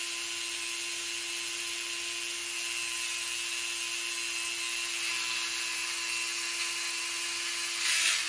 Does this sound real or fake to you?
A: real